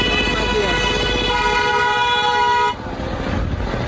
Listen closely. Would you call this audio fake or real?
real